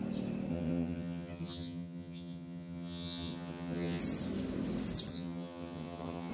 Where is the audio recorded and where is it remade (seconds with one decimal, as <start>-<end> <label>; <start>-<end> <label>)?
0.0-0.5 recorded; 0.5-4.0 remade; 4.0-5.1 recorded; 5.1-6.3 remade